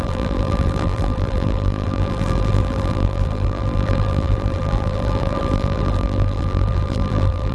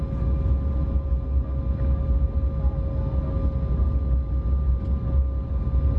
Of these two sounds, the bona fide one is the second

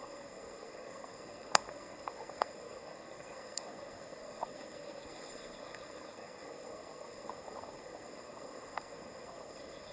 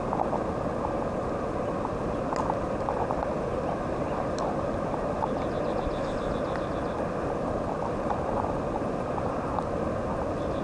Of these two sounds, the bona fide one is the second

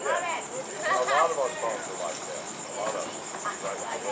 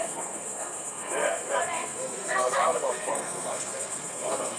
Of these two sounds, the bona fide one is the first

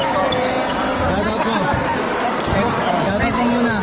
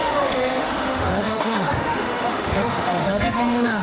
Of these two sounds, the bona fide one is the first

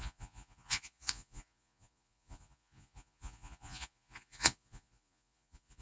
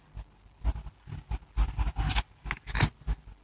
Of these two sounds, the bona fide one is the second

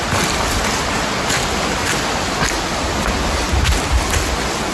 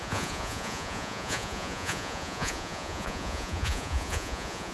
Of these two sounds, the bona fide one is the first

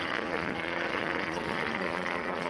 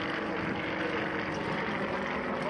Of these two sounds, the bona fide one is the second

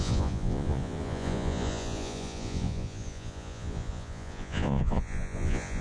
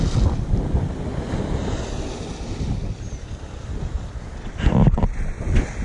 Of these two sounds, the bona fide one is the second